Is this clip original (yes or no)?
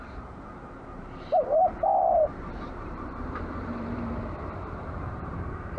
no